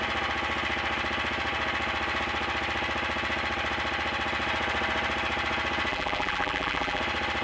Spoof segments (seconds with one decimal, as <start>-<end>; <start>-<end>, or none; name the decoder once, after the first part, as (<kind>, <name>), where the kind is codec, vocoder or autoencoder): 5.9-7.0 (vocoder, BigVGAN v2)